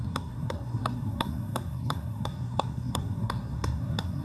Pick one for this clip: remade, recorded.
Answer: remade